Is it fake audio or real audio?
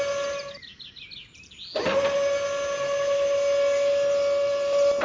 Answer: real